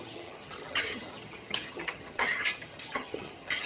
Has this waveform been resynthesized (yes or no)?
yes